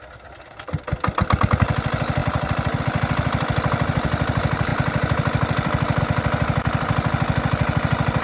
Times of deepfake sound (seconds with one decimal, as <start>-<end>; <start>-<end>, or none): 4.7-6.0